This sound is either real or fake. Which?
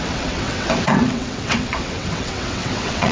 fake